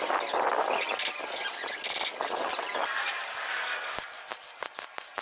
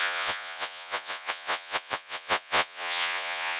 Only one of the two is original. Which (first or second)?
first